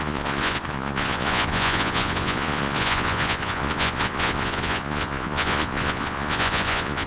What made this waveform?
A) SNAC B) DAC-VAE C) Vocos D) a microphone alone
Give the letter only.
C